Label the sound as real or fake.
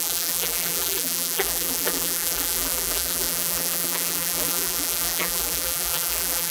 fake